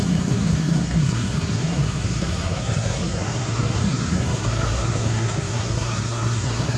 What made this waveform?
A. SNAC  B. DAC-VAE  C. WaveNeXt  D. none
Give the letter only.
A